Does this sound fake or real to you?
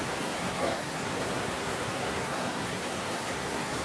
fake